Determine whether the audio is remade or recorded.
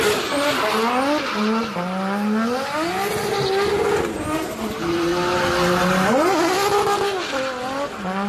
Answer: recorded